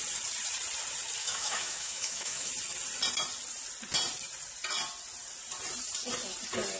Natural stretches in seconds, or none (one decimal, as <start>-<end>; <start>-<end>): 0.0-1.2; 2.5-6.8